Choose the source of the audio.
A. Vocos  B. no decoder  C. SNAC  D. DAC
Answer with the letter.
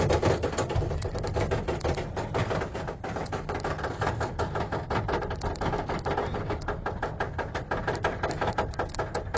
B